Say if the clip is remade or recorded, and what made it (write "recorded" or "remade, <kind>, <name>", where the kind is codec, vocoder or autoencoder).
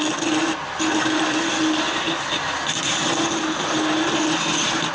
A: recorded